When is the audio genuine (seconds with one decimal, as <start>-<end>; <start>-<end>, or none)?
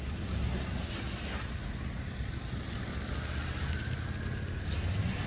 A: 0.0-5.3